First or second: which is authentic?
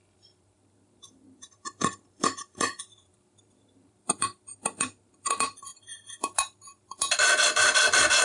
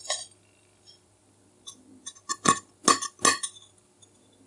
second